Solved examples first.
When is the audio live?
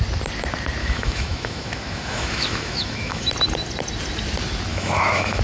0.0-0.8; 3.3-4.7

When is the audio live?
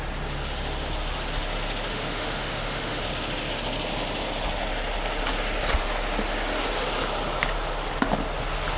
0.0-1.9; 3.0-8.8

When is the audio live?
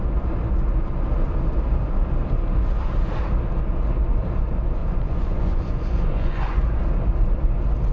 0.0-4.8; 6.6-7.9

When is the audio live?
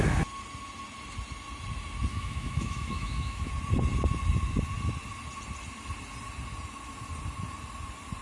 0.0-2.1; 3.5-8.2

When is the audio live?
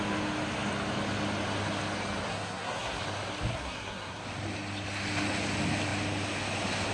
0.0-2.3; 3.0-3.5; 4.2-6.9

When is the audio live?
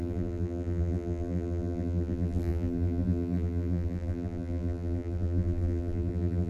none